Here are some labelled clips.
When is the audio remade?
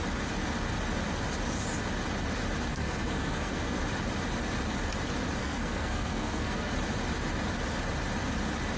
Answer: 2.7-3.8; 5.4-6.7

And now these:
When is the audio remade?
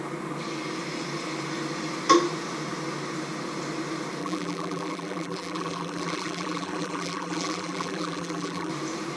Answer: 4.2-8.7